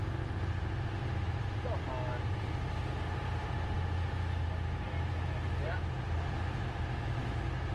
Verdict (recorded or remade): recorded